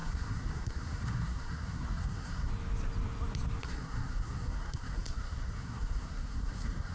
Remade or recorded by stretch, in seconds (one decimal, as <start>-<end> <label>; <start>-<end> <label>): 0.0-2.5 remade; 2.5-3.6 recorded; 3.6-6.9 remade